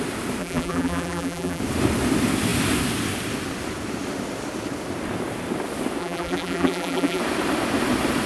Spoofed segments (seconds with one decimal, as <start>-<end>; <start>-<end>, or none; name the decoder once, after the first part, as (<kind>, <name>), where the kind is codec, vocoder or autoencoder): 0.4-1.6 (vocoder, BigVGAN v2); 6.0-7.2